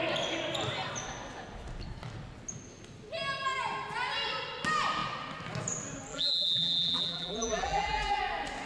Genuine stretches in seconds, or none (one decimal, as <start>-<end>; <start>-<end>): 0.0-6.1; 8.2-8.7